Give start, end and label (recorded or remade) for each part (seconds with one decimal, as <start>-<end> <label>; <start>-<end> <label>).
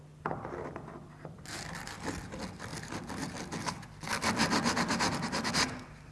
0.0-6.1 recorded